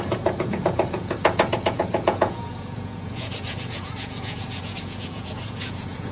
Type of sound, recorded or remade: remade